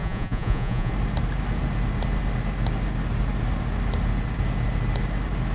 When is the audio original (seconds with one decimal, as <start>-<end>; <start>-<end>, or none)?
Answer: 0.9-5.5